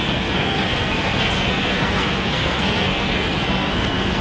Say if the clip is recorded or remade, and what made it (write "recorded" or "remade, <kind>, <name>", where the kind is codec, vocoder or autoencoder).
remade, codec, SNAC